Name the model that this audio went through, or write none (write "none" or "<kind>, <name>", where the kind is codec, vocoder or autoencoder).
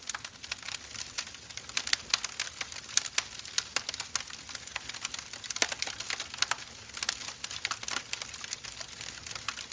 none